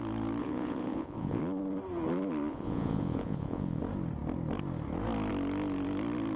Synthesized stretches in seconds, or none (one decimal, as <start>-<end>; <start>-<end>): 0.4-1.4; 2.5-3.8